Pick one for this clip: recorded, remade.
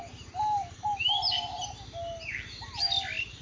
recorded